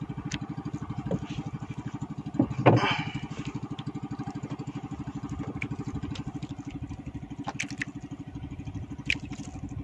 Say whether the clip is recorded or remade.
recorded